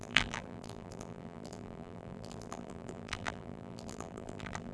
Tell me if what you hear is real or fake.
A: fake